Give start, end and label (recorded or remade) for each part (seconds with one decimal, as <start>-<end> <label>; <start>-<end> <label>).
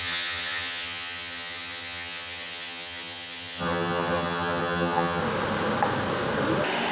0.0-5.2 remade; 5.2-6.9 recorded